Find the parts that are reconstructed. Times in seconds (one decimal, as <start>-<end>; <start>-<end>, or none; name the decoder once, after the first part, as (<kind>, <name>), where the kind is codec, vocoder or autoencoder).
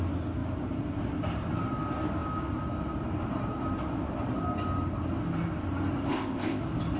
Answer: 6.1-6.6 (codec, ZipCodec)